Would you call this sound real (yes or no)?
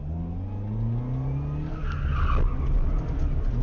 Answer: yes